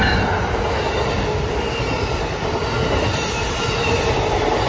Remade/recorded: recorded